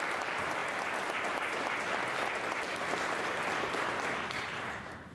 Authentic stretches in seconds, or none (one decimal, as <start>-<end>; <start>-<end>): 0.0-5.1